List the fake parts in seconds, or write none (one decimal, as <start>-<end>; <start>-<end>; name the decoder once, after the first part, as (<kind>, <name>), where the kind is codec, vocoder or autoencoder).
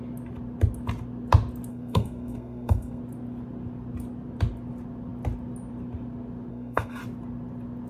1.7-3.0 (codec, SNAC); 6.5-7.0